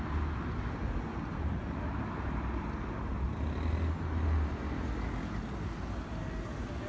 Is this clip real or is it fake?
real